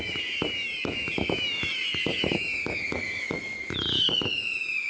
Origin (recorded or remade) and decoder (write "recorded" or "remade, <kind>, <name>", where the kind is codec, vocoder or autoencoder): remade, autoencoder, DAC-VAE